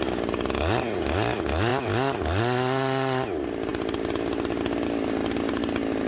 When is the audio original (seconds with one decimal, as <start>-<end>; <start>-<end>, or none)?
0.0-6.1